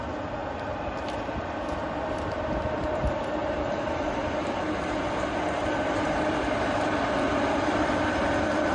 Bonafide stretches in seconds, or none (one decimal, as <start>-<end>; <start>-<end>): 0.0-0.4; 3.0-8.7